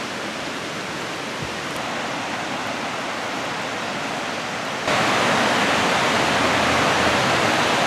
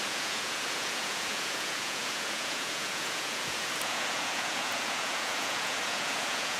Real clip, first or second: first